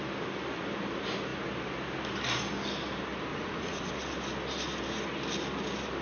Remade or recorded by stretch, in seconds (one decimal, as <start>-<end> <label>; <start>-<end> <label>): 0.0-3.3 recorded; 3.3-3.9 remade; 3.9-6.0 recorded